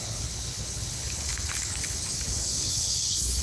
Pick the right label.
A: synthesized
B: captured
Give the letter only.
A